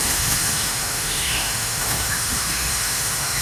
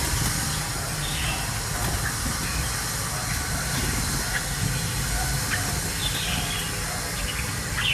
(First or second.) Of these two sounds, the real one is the second